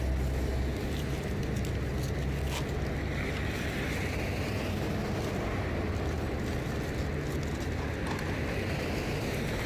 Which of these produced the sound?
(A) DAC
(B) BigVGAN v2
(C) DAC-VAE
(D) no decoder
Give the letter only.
D